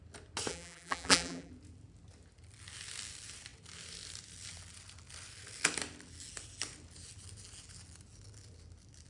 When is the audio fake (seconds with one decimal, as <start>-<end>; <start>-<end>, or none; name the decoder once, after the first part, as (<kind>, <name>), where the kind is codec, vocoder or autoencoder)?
0.5-1.5 (vocoder, BigVGAN v2)